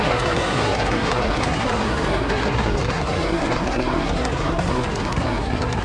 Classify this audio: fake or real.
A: fake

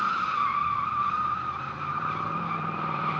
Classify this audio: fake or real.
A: fake